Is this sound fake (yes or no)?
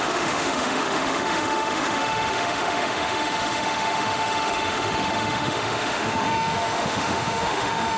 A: yes